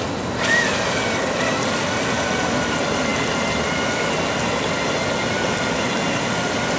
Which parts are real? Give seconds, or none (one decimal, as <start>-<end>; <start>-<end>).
0.0-6.8